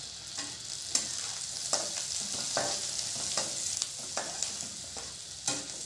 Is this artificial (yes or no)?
no